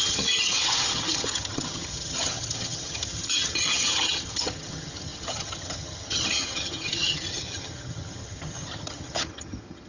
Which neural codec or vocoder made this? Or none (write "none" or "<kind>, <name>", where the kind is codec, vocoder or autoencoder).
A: vocoder, HiFi-GAN